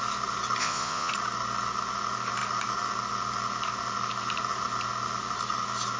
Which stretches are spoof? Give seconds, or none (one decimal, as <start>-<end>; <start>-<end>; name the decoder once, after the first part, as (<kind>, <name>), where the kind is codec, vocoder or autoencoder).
0.6-1.1 (vocoder, Vocos)